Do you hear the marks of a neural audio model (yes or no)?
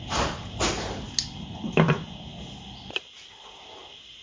no